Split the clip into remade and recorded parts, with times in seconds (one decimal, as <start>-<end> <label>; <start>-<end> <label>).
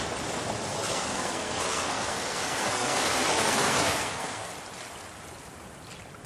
0.0-0.7 recorded; 0.7-4.5 remade; 4.5-6.3 recorded